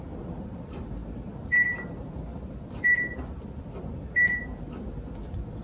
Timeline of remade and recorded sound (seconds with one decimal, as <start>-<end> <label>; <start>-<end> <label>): 0.0-5.6 recorded